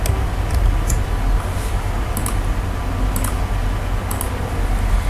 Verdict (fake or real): real